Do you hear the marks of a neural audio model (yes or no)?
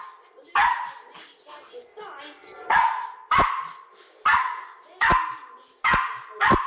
no